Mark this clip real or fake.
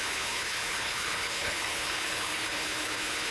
fake